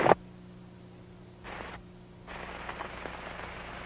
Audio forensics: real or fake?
real